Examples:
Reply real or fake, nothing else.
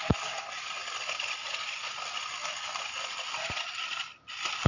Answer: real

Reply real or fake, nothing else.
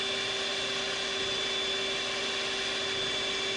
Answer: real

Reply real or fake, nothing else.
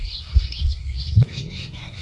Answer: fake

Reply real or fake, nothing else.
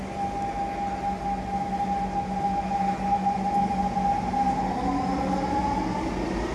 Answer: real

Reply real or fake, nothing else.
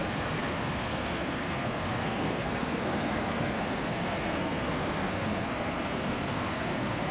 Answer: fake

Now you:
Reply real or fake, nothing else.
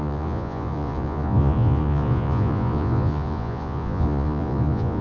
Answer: fake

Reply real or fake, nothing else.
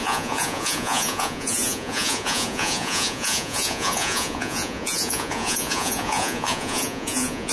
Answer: fake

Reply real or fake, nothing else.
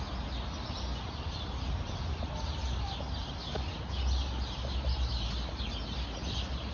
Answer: real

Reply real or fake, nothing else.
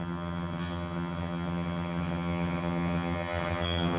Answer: fake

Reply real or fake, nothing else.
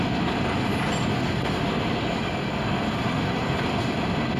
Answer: real